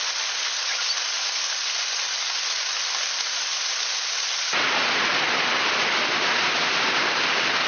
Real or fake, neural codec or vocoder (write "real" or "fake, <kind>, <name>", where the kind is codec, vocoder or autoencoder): real